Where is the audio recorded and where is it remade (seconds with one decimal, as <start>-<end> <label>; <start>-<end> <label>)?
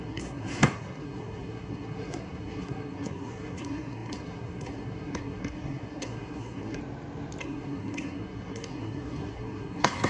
0.0-6.8 remade; 6.8-7.4 recorded; 7.4-10.1 remade